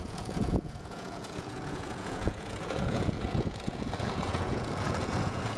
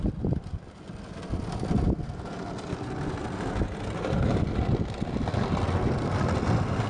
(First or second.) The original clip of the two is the second